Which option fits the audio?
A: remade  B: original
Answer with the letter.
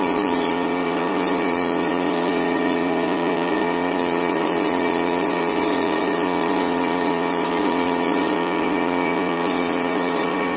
A